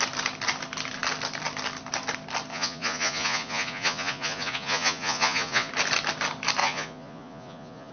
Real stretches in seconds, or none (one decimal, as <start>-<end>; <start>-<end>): 0.0-2.5; 5.7-6.6